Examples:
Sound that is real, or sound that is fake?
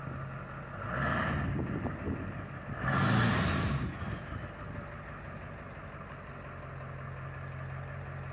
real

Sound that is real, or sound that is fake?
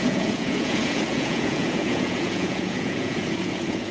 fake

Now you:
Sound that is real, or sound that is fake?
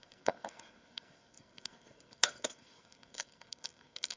fake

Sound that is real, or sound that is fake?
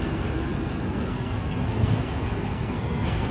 fake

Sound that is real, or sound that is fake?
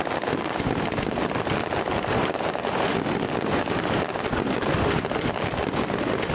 real